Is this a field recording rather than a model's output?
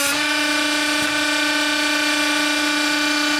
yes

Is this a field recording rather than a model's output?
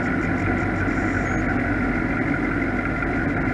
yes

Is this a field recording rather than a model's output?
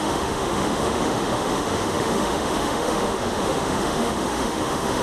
no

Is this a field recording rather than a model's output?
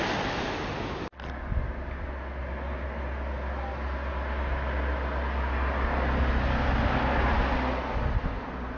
yes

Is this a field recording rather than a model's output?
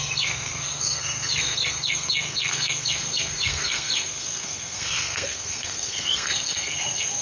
no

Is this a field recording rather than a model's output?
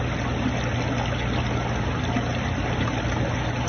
yes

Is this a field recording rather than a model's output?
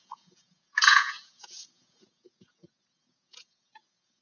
no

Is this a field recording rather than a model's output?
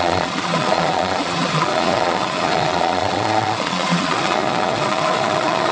no